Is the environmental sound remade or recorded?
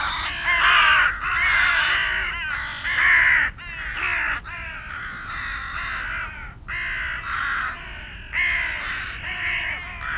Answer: recorded